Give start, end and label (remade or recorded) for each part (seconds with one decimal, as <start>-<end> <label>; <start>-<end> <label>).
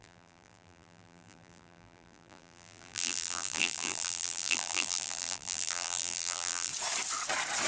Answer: 0.0-6.7 remade; 6.7-7.7 recorded